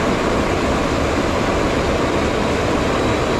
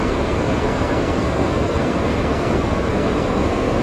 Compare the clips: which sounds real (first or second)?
first